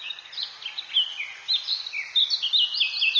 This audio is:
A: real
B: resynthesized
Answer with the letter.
A